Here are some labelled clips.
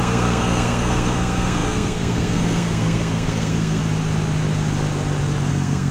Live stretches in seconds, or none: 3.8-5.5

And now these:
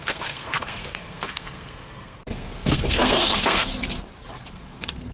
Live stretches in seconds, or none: 3.7-4.5

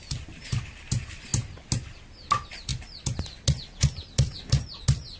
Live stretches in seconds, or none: 0.0-5.2